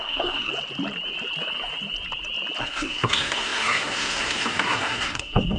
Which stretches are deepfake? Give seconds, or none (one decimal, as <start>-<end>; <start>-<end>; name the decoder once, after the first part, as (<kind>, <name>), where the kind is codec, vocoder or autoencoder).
0.0-0.5 (codec, SNAC); 2.6-5.6